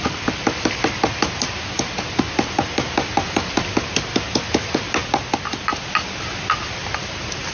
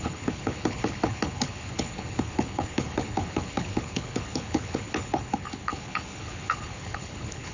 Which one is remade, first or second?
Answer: second